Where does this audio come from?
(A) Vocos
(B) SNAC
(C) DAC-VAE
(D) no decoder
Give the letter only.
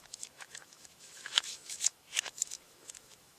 C